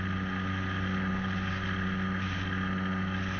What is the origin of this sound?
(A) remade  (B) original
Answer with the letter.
B